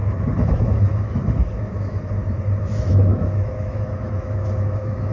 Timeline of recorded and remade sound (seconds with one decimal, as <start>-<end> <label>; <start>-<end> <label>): 0.0-2.2 remade; 2.2-2.8 recorded; 2.8-5.1 remade